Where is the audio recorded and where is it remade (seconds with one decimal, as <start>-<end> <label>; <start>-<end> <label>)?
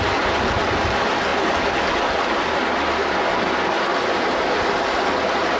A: 0.0-5.6 recorded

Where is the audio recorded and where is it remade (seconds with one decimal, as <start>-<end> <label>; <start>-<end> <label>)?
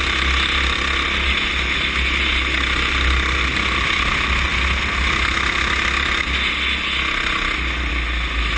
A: 0.0-8.6 recorded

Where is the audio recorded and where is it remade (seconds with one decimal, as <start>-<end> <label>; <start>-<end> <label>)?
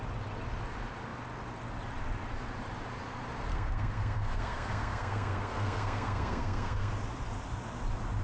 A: 0.0-3.5 recorded; 3.5-6.9 remade; 6.9-8.2 recorded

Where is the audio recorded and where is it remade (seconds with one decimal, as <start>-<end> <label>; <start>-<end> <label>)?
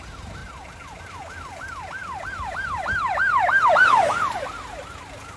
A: 0.0-0.4 recorded; 0.4-1.0 remade; 1.0-5.4 recorded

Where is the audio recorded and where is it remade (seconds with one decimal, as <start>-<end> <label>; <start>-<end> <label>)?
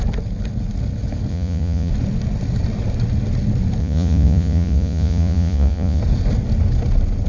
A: 0.0-1.3 recorded; 1.3-1.9 remade; 1.9-3.8 recorded; 3.8-6.0 remade; 6.0-7.3 recorded